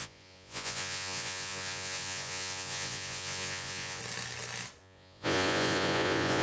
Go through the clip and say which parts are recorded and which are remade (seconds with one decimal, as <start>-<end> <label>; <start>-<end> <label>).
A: 0.0-4.0 remade; 4.0-4.8 recorded; 4.8-6.4 remade